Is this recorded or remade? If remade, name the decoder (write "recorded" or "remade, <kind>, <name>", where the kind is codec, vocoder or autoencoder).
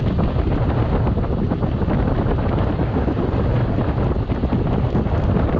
recorded